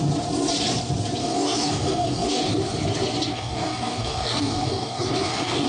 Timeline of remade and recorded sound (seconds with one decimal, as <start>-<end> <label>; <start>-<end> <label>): 0.0-1.2 recorded; 1.2-2.5 remade; 2.5-3.3 recorded; 3.3-5.7 remade